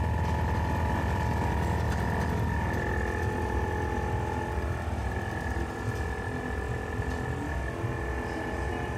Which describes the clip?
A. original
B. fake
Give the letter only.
A